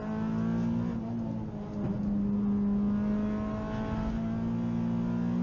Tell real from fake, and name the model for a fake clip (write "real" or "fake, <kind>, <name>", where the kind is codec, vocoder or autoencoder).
real